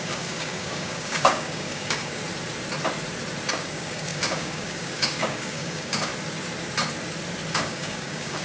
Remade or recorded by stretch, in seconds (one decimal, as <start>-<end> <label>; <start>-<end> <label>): 0.0-2.2 remade; 2.2-3.5 recorded; 3.5-6.1 remade; 6.1-7.5 recorded; 7.5-8.4 remade